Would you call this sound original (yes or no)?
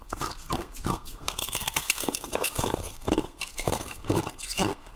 no